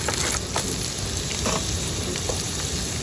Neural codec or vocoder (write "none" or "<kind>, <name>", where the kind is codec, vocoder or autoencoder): none